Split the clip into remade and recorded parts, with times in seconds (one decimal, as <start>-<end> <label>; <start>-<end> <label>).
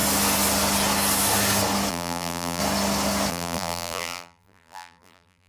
0.0-1.9 recorded; 1.9-2.6 remade; 2.6-3.3 recorded; 3.3-5.5 remade